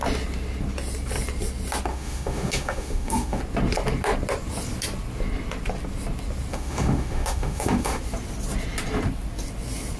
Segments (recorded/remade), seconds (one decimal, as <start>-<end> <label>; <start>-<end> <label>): 0.0-1.9 recorded; 1.9-3.4 remade; 3.4-6.5 recorded; 6.5-8.0 remade; 8.0-10.0 recorded